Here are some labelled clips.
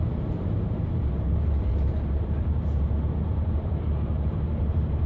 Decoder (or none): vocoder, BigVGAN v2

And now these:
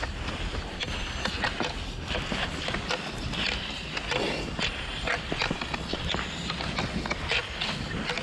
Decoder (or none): none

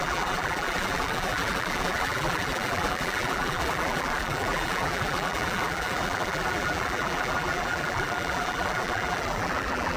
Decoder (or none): vocoder, BigVGAN v2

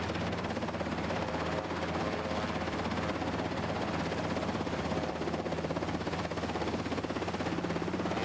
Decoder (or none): vocoder, BigVGAN v2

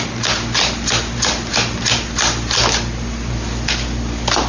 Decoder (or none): none